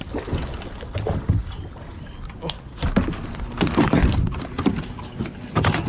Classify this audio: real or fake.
real